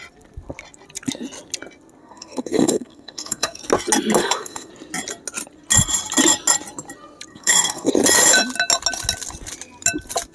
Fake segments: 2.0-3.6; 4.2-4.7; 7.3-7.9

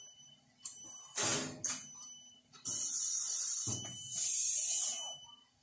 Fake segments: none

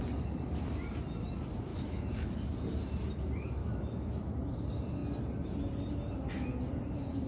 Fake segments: 1.7-2.3; 3.6-4.3